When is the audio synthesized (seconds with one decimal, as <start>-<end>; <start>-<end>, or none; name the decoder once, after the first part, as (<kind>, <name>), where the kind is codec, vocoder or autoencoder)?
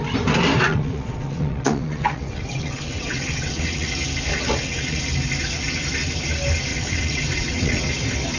0.7-3.9 (vocoder, WaveNeXt); 4.3-5.0; 6.7-7.8